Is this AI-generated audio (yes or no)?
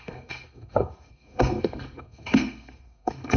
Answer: yes